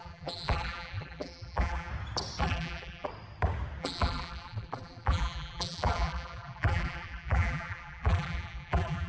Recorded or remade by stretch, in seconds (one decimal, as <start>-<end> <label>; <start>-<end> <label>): 0.0-1.9 remade; 1.9-2.4 recorded; 2.4-3.1 remade; 3.1-3.8 recorded; 3.8-9.1 remade